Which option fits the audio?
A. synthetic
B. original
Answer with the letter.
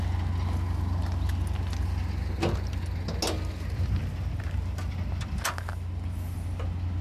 B